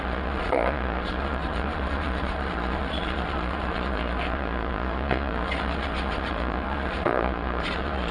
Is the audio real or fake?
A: fake